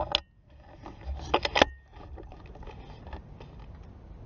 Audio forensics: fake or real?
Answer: real